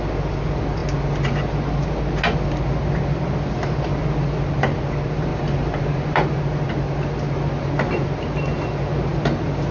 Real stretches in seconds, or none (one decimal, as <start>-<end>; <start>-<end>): 0.0-5.3; 6.5-9.7